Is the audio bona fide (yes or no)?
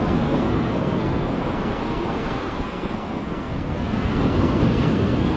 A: no